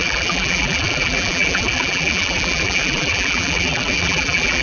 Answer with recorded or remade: remade